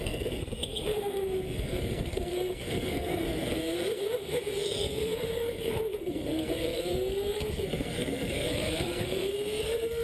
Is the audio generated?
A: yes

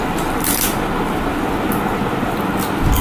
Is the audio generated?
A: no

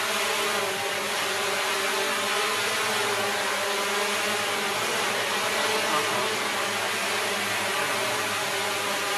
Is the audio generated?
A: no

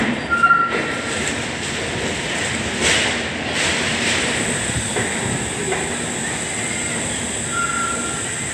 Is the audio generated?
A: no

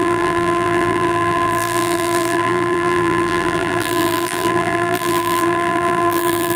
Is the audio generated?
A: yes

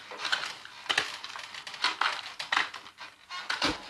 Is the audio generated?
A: no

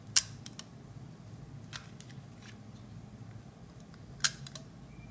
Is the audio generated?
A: no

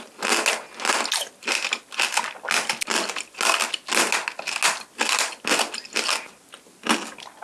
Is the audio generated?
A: no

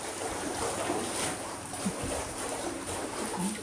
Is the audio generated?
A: yes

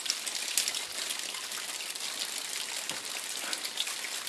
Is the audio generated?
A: no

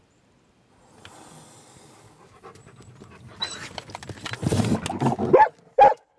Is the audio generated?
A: no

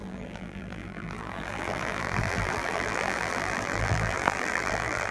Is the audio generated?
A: yes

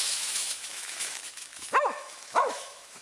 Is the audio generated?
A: yes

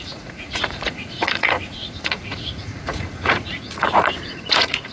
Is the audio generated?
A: yes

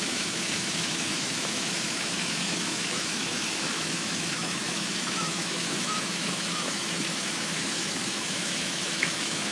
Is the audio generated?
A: yes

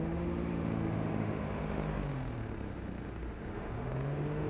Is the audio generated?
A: yes